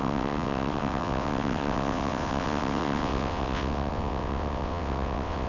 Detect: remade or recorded remade